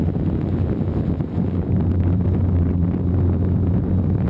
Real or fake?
real